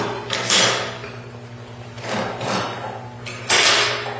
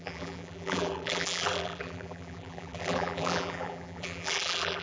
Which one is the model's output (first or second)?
second